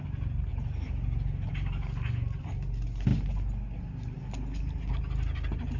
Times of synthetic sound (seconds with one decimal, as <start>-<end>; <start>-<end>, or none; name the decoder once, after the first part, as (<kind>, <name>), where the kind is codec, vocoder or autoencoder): none